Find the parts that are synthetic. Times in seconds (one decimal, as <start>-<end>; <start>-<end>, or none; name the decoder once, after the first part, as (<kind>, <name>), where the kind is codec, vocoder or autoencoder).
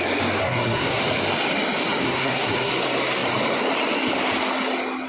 0.4-1.0 (codec, SNAC); 2.0-2.7